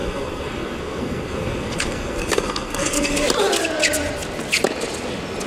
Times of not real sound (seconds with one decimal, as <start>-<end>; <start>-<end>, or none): 0.0-3.1